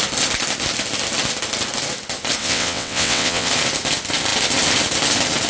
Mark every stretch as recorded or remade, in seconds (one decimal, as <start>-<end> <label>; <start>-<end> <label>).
0.0-2.4 recorded; 2.4-3.5 remade; 3.5-5.5 recorded